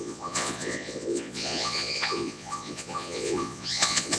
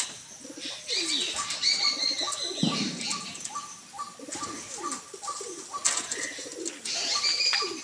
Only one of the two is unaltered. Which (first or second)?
second